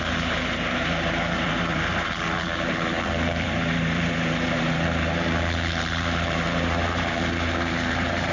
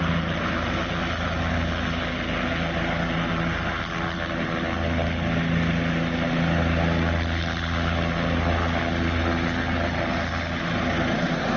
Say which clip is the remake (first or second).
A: first